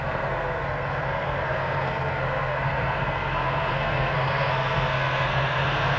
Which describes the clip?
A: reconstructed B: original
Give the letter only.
A